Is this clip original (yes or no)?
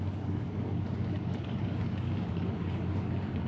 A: no